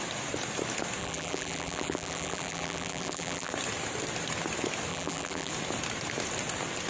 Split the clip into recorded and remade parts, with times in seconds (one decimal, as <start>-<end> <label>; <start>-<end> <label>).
0.0-1.0 recorded; 1.0-3.5 remade; 3.5-4.9 recorded; 4.9-5.5 remade; 5.5-6.9 recorded